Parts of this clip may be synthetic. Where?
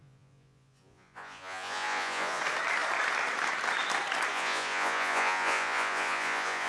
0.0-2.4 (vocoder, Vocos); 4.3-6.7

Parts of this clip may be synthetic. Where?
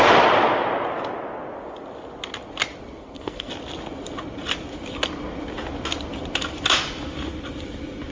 2.8-3.5 (codec, SNAC)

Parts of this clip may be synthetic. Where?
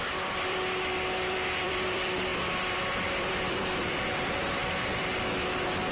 0.0-4.6 (vocoder, BigVGAN v2)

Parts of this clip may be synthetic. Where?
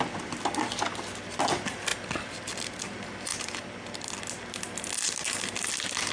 3.3-4.2 (vocoder, BigVGAN v2)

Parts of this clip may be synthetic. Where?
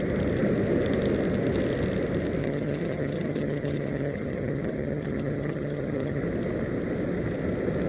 2.4-6.2 (vocoder, HiFi-GAN)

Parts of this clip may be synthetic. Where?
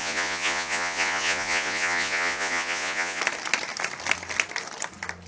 0.0-3.2 (vocoder, Vocos)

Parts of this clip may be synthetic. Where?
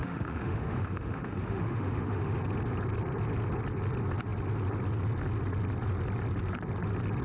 0.0-2.4 (autoencoder, DAC-VAE)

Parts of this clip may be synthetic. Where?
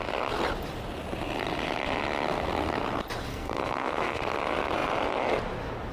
3.3-4.2 (codec, SNAC)